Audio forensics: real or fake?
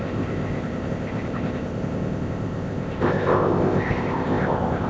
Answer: fake